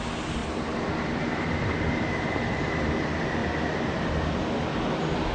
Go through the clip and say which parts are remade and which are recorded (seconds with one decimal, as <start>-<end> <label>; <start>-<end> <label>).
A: 0.0-0.4 recorded; 0.4-2.9 remade; 2.9-3.4 recorded; 3.4-4.4 remade; 4.4-5.3 recorded